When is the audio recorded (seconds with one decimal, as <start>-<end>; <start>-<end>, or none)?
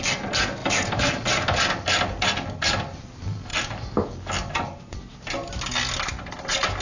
0.0-0.6; 1.2-3.5; 4.2-6.8